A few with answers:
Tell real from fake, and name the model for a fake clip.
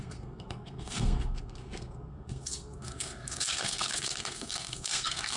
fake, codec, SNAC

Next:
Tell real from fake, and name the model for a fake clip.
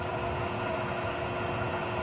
real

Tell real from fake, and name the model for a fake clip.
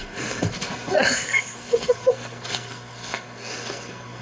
fake, codec, SNAC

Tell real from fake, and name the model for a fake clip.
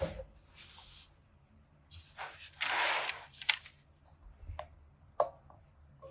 real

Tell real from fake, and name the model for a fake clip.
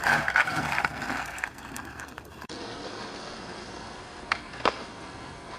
fake, codec, SNAC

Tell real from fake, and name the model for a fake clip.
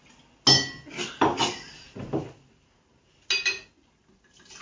real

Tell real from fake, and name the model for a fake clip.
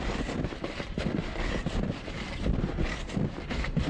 real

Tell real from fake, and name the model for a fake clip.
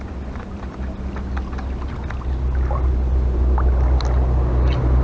real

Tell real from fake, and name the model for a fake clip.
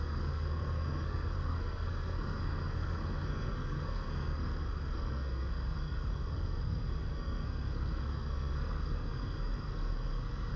fake, codec, SNAC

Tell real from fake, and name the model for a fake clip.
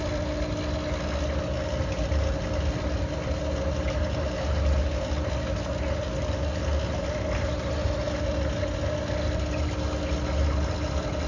real